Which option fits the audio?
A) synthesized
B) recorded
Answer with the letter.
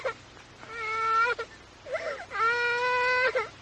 B